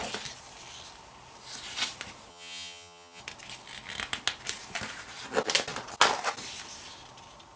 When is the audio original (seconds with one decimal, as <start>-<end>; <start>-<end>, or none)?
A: 0.0-2.3; 3.2-7.6